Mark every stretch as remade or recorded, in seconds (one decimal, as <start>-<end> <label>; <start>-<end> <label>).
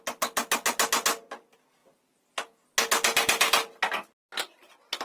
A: 0.0-5.0 recorded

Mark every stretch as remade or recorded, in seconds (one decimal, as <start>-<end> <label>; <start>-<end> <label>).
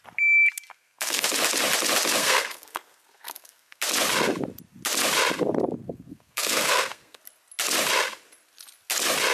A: 0.0-0.7 recorded; 0.7-1.3 remade; 1.3-2.2 recorded; 2.2-3.8 remade; 3.8-5.8 recorded; 5.8-7.2 remade; 7.2-9.3 recorded